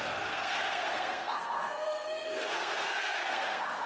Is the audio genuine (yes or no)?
no